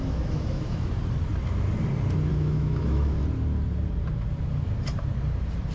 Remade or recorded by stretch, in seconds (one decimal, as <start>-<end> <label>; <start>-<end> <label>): 0.0-0.9 remade; 0.9-2.3 recorded; 2.3-3.2 remade; 3.2-5.7 recorded